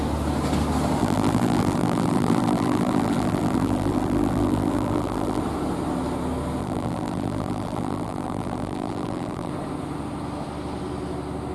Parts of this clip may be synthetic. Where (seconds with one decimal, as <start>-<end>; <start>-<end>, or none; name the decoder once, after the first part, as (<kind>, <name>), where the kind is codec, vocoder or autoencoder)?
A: 1.0-5.4 (vocoder, BigVGAN v2); 6.6-9.5